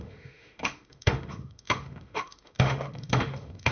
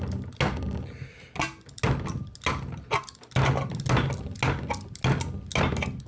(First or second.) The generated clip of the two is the first